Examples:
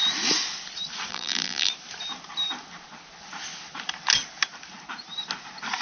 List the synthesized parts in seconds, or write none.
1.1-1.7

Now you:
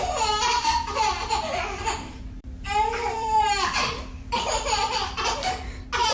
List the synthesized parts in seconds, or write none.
1.6-5.3

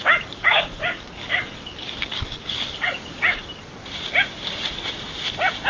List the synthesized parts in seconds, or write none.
0.0-3.4

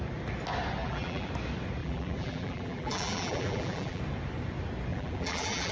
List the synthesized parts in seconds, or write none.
0.8-1.3; 1.8-4.0; 4.9-5.7